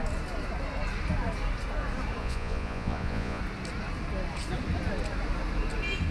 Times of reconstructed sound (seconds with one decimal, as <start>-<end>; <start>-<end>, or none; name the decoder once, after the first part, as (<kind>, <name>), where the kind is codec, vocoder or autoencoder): 2.2-3.4 (vocoder, Vocos)